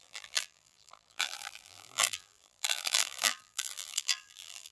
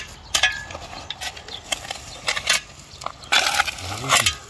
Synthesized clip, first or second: first